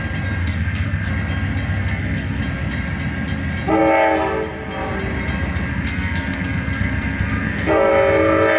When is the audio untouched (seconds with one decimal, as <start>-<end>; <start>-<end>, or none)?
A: 0.0-0.4; 1.1-1.8; 2.4-5.7; 7.9-8.6